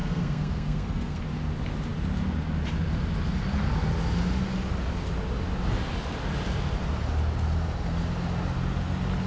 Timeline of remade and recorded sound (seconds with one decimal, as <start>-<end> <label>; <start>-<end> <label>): 0.0-1.2 remade; 1.2-9.3 recorded